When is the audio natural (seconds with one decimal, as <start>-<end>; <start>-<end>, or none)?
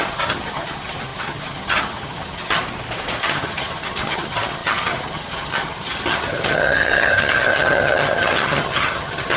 2.6-3.2